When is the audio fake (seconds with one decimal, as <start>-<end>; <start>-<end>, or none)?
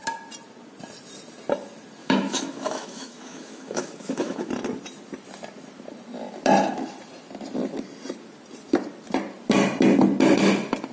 2.0-4.5